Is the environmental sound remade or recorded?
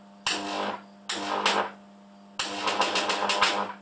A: recorded